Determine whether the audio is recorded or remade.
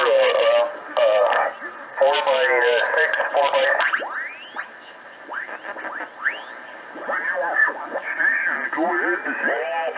recorded